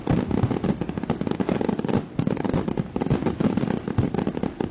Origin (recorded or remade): recorded